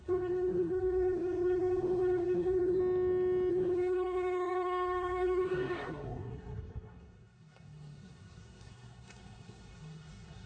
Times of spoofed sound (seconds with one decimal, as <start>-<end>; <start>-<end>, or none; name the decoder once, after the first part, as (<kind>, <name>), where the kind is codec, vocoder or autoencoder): 0.0-2.8 (codec, SNAC); 3.5-10.5